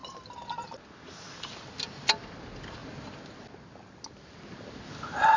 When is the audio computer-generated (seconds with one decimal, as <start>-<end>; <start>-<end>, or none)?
none